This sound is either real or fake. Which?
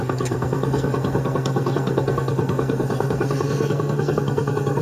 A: fake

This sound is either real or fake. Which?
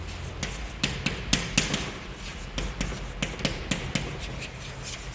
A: real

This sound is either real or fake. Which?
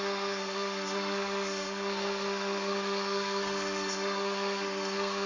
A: fake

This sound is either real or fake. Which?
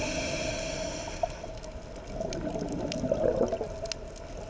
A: real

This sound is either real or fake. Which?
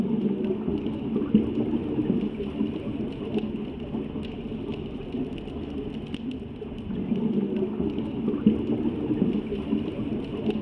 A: real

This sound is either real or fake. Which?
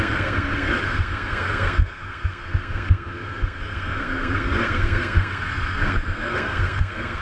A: fake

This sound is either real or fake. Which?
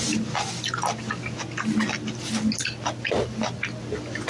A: real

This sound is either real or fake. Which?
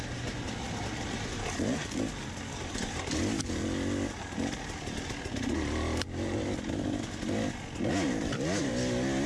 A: real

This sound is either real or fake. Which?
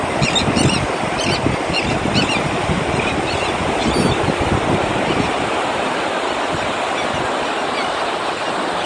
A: real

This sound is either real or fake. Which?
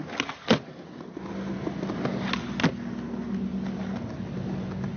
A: real